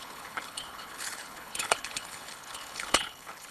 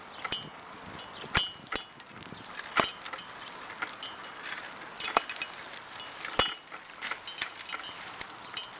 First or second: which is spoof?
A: first